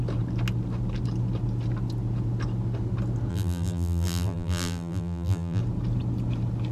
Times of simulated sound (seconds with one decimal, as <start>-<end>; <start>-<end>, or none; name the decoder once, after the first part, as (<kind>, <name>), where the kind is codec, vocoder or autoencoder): 3.3-5.6 (vocoder, BigVGAN v2)